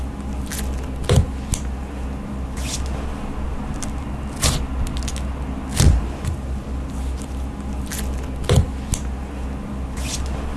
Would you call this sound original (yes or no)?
yes